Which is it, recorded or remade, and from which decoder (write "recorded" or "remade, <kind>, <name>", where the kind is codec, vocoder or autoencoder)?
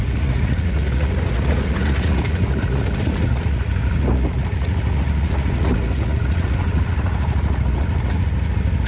remade, vocoder, Vocos